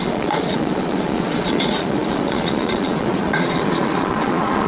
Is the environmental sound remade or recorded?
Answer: remade